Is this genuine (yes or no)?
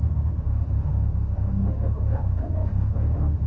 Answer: no